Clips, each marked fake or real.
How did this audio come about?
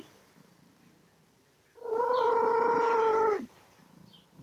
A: real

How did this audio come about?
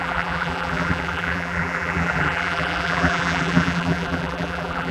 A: fake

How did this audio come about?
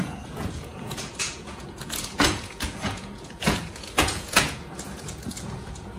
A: fake